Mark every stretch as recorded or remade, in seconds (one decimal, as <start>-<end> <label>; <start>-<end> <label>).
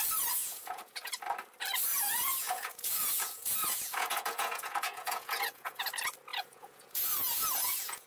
0.0-0.4 recorded; 0.4-1.1 remade; 1.1-1.9 recorded; 1.9-5.8 remade; 5.8-6.3 recorded; 6.3-8.1 remade